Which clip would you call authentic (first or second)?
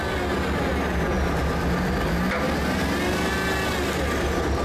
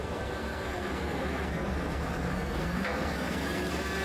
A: first